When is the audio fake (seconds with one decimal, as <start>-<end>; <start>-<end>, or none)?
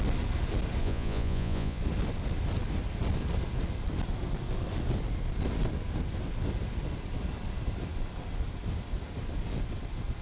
0.8-1.8